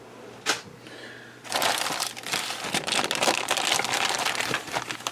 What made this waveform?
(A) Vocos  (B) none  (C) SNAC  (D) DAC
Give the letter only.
B